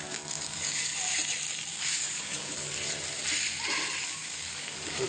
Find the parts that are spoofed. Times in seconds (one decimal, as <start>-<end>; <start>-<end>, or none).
0.0-0.9; 1.7-2.5; 4.0-5.1